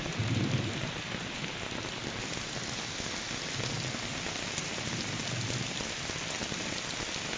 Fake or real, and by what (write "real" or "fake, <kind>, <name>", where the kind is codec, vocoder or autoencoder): real